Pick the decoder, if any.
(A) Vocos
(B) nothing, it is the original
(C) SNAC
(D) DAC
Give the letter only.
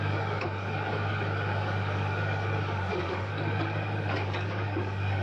D